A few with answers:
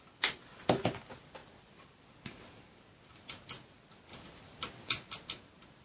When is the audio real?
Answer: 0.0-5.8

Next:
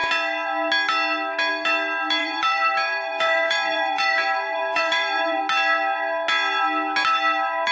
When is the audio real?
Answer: 0.0-2.2; 5.4-7.7

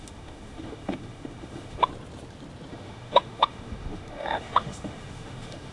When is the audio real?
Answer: 1.9-2.7

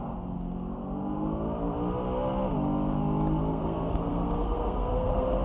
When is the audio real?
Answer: 0.0-3.5

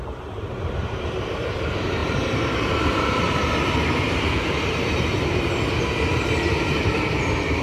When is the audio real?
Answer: 5.1-6.3

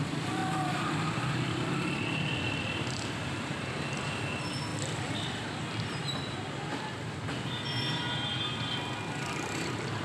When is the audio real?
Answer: 4.7-8.7

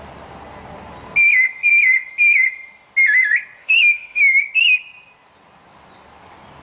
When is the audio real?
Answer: 0.0-3.6; 4.4-6.6

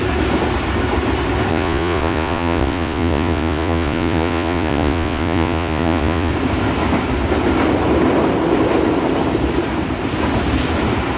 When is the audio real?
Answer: 0.0-1.5; 6.3-11.2